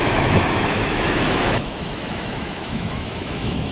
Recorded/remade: remade